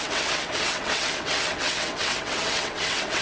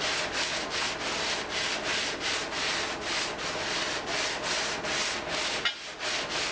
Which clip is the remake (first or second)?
first